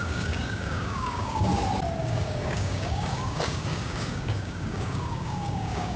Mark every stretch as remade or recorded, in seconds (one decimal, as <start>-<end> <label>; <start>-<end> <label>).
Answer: 0.0-1.5 remade; 1.5-2.0 recorded; 2.0-6.0 remade